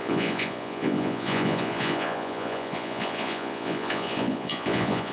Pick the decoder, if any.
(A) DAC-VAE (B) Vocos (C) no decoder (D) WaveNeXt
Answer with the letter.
B